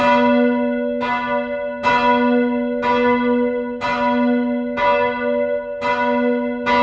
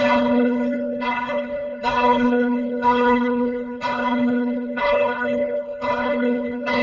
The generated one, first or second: second